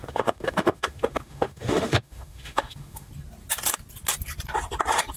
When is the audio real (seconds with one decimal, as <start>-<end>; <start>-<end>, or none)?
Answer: 3.1-5.2